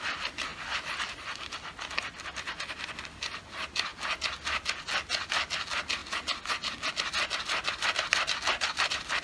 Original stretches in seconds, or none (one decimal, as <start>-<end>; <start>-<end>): 0.0-9.2